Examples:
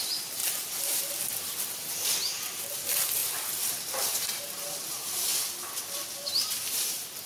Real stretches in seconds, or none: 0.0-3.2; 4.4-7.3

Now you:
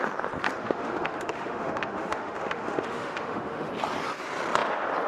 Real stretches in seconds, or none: 0.0-0.6; 3.7-5.1